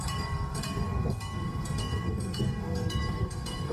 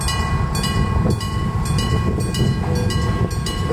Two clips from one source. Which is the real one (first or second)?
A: second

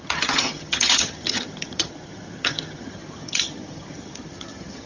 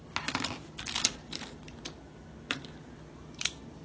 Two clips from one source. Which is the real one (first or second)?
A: second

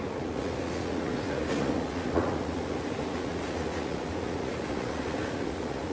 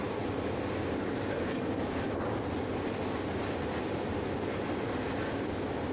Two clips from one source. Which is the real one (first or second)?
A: second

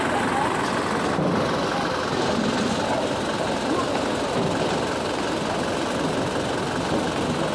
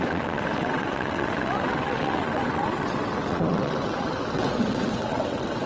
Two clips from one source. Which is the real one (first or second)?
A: first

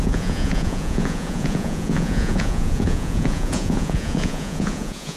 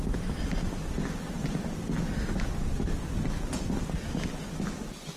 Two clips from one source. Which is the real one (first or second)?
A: second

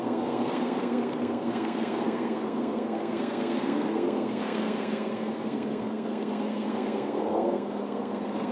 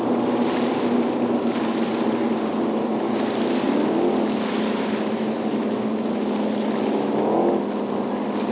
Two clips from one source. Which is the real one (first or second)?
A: second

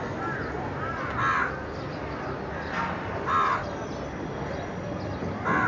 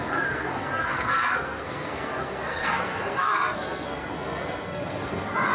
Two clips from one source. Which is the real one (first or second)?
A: first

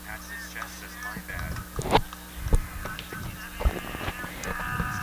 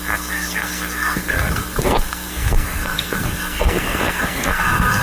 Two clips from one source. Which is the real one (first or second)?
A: first